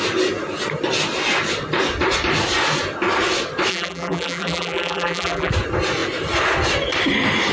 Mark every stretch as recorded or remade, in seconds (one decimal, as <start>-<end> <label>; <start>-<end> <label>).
0.0-3.7 recorded; 3.7-5.5 remade; 5.5-7.5 recorded